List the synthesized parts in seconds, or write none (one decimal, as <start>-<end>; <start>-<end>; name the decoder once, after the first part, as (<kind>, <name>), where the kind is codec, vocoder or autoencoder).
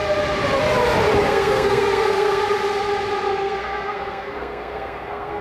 1.2-2.4 (codec, SNAC); 3.3-5.4